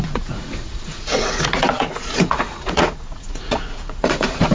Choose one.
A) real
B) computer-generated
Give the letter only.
B